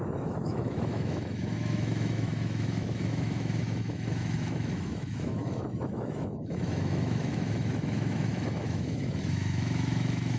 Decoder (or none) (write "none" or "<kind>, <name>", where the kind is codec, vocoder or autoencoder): autoencoder, DAC-VAE